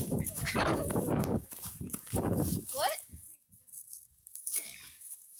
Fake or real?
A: fake